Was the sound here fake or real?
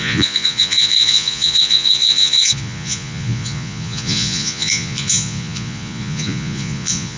fake